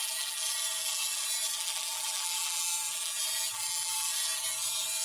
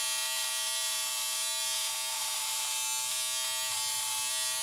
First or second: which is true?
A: second